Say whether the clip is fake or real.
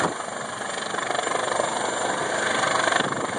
real